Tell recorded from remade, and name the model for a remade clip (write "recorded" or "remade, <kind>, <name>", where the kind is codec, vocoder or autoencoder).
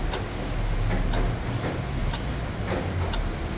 recorded